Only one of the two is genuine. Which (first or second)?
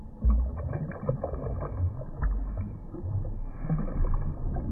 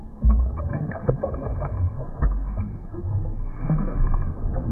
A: first